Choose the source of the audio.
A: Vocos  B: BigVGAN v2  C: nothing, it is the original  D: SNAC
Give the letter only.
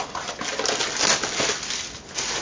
C